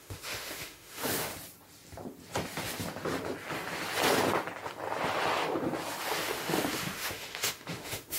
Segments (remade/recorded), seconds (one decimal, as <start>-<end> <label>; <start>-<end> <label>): 0.0-1.3 remade; 1.3-6.2 recorded; 6.2-8.2 remade